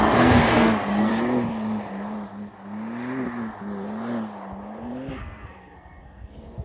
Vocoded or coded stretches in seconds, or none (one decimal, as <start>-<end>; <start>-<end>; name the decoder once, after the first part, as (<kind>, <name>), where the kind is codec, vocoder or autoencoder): 0.0-1.1 (codec, SNAC); 5.1-6.6